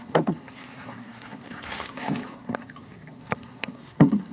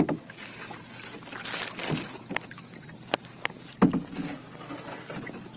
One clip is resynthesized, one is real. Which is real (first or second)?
second